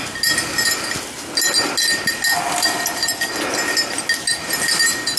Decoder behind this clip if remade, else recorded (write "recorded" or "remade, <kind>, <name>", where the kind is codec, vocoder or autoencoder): recorded